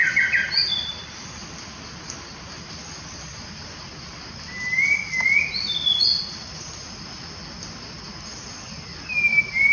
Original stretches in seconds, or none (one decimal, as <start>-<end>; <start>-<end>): 0.0-9.7